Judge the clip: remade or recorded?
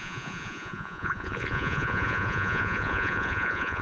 remade